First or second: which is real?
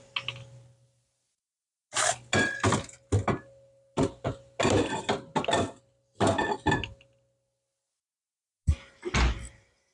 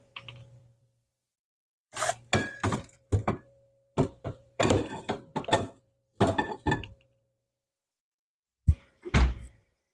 first